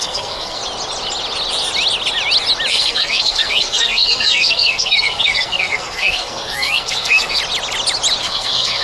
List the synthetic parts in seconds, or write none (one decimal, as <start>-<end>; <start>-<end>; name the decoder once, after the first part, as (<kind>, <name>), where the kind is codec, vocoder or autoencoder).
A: 0.0-0.6 (codec, SNAC); 2.7-7.4; 8.2-8.8